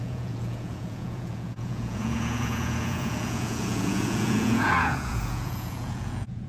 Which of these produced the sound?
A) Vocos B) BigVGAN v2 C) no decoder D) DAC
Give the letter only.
A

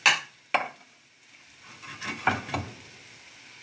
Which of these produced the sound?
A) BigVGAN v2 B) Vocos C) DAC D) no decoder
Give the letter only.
D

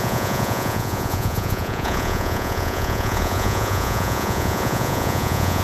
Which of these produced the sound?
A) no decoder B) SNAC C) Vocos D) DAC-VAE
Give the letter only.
C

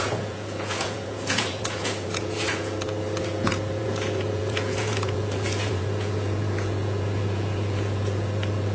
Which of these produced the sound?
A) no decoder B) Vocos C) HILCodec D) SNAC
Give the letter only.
B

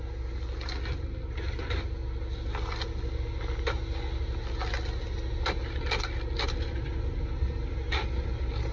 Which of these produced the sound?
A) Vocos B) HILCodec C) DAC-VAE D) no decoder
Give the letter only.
D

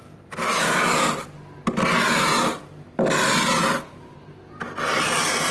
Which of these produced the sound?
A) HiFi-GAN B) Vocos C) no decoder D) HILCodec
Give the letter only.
C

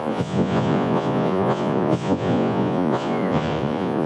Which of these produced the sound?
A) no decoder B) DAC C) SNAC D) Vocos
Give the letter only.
D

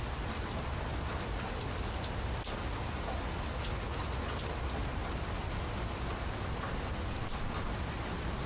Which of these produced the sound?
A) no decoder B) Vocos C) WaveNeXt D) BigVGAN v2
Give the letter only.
A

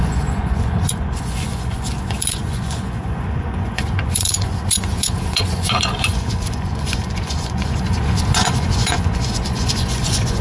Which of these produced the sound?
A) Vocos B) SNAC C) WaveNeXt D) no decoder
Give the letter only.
A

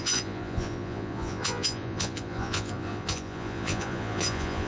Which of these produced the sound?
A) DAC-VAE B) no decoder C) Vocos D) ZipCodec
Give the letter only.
C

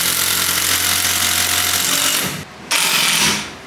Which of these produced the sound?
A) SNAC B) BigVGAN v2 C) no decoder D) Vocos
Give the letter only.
C